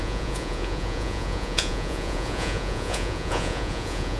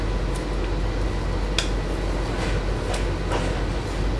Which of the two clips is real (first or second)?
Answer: second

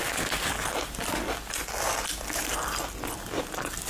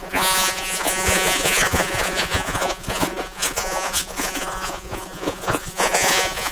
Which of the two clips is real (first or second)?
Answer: first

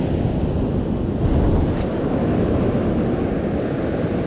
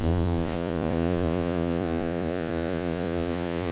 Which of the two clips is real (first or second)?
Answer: first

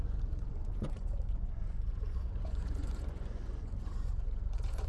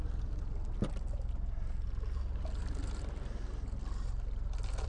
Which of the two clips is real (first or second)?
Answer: second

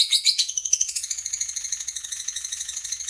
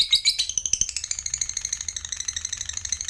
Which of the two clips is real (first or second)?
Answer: second